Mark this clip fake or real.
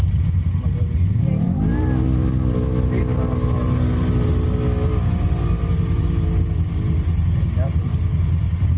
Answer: real